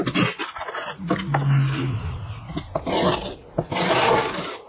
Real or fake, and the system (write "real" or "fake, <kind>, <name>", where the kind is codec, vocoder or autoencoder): real